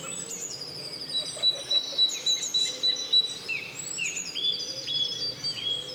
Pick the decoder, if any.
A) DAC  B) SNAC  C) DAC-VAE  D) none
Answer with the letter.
D